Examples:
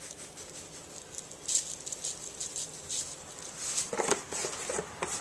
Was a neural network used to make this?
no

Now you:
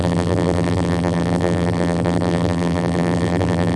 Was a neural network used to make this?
yes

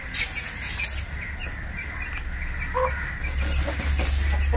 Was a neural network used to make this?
no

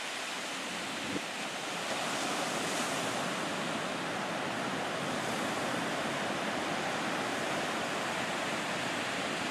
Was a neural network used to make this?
no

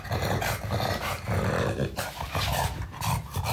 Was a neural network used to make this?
no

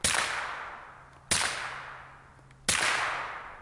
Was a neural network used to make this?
no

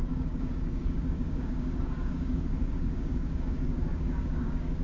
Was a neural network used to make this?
yes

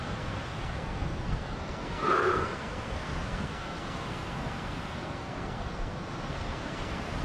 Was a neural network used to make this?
yes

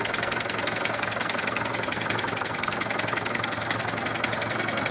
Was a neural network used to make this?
yes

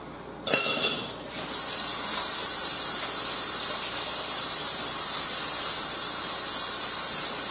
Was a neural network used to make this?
no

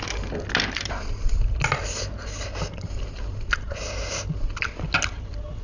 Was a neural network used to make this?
no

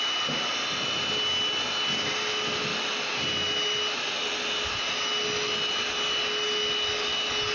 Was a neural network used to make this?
no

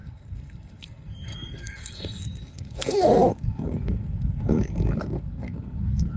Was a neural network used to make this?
yes